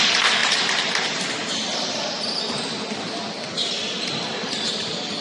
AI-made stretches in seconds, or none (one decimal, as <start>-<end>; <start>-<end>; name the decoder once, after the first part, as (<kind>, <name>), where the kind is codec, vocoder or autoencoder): 0.0-5.2 (vocoder, BigVGAN v2)